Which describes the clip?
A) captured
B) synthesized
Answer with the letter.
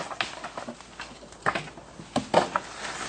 A